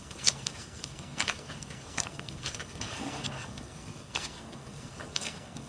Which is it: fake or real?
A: fake